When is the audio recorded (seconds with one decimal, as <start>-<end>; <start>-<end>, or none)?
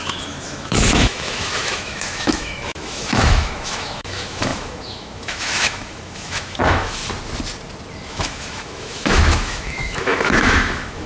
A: 7.0-8.1